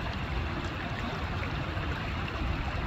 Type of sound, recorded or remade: recorded